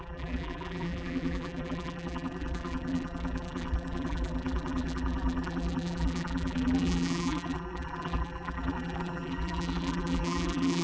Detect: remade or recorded remade